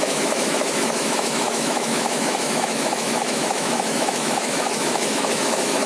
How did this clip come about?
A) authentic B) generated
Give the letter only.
B